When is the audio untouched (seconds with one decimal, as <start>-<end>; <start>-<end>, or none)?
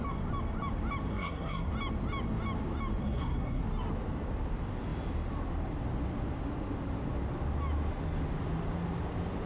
0.0-1.1; 1.7-3.0; 3.6-9.5